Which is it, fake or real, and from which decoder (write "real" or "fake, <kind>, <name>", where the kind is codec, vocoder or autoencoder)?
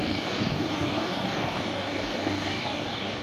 fake, codec, DAC